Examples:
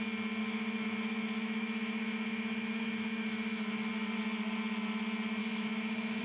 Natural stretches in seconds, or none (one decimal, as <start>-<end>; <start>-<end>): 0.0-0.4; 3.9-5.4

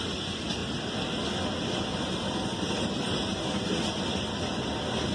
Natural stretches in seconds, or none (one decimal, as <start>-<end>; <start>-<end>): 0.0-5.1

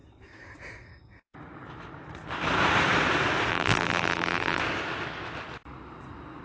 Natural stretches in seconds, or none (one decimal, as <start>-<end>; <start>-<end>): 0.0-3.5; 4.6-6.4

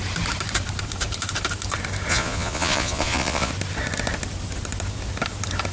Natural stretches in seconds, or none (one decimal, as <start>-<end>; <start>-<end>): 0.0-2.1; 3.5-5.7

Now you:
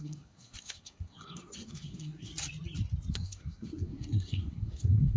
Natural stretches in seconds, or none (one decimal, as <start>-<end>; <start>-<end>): 2.3-3.1

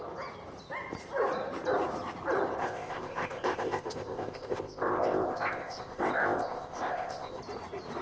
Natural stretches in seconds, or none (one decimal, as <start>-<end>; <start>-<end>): 0.0-2.6; 7.4-8.0